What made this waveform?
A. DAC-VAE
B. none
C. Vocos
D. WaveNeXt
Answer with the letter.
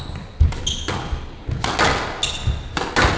B